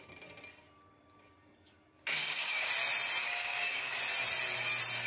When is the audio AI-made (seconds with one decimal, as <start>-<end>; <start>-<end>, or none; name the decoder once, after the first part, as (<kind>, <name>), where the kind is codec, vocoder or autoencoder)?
2.2-2.7 (codec, DAC); 3.2-4.0